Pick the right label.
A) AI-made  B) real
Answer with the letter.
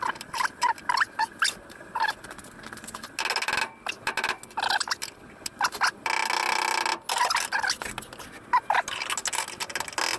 B